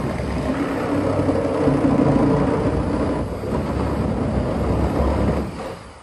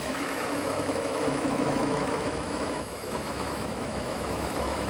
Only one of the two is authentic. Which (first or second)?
first